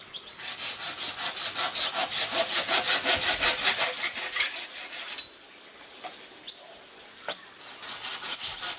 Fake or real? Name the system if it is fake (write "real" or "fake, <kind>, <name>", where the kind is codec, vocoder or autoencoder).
real